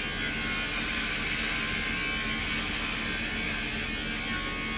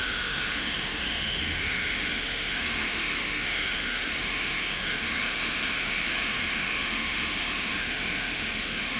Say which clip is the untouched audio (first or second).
first